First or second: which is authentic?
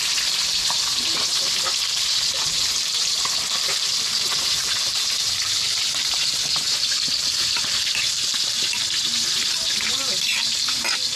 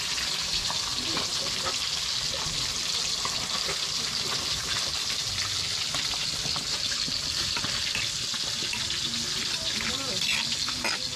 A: second